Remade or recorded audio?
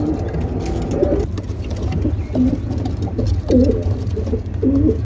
recorded